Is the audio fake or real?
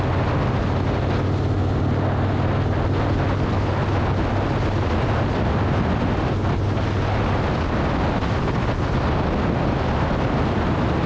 real